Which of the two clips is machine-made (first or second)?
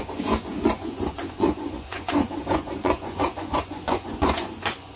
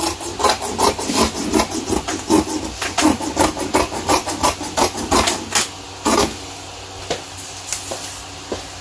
first